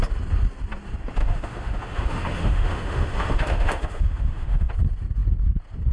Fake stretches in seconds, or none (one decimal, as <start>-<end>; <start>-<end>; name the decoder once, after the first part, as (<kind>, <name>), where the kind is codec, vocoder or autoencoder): 1.2-4.7 (autoencoder, DAC-VAE)